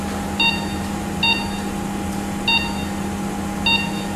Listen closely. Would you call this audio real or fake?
real